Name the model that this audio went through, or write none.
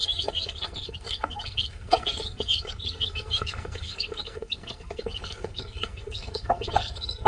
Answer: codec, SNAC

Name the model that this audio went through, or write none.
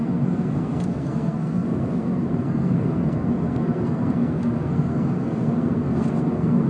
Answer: codec, SNAC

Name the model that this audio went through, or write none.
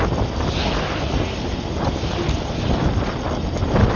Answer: none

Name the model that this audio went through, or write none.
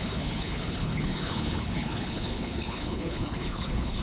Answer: codec, HILCodec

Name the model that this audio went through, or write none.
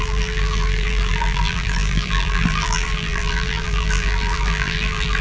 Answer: vocoder, BigVGAN v2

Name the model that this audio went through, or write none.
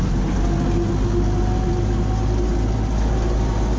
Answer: none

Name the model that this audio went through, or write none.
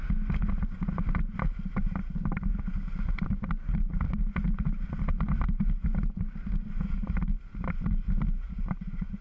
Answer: none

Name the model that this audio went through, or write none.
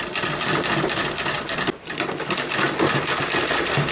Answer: none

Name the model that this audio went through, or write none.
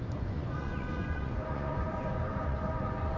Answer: vocoder, Vocos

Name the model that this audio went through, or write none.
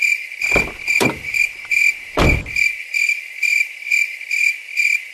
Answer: vocoder, BigVGAN v2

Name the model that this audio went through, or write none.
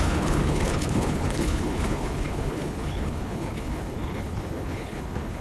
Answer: codec, HILCodec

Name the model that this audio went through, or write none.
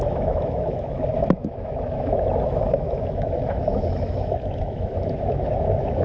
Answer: autoencoder, DAC-VAE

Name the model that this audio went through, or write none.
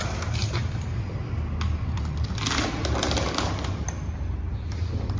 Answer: none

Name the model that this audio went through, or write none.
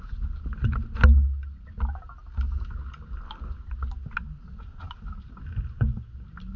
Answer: none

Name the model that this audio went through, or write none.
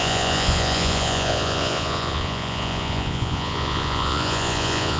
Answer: vocoder, Vocos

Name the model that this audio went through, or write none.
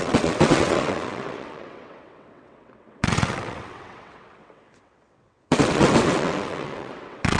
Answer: vocoder, WaveNeXt